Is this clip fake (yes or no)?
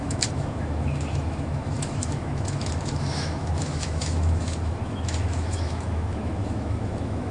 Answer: yes